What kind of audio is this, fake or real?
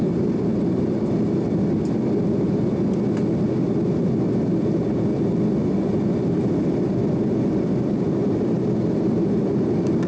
real